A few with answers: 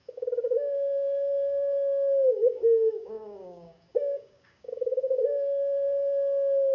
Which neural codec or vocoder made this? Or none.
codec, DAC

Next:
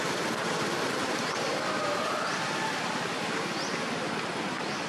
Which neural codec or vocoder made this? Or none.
none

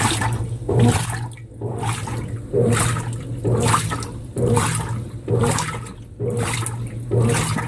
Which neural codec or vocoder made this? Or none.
none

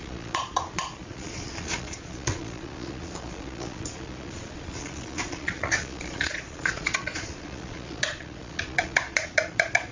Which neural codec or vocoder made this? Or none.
vocoder, Vocos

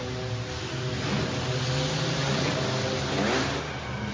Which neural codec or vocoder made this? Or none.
none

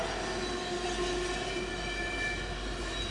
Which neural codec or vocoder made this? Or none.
none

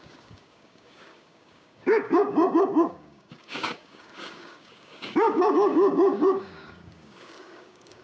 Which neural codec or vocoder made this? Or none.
codec, DAC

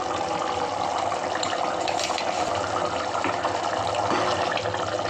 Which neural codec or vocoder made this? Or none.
none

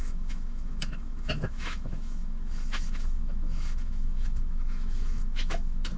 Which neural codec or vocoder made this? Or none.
autoencoder, DAC-VAE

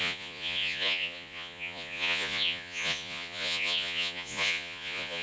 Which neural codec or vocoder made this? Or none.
vocoder, Vocos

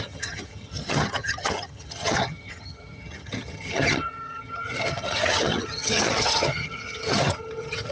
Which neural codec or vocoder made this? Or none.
vocoder, HiFi-GAN